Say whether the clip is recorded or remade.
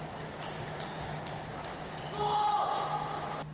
recorded